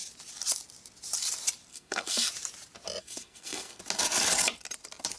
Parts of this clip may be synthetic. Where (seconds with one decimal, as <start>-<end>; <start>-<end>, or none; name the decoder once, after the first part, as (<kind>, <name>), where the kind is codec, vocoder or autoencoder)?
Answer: 1.7-2.3 (codec, SNAC); 3.0-3.8